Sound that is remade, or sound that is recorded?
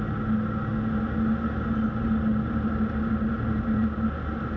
recorded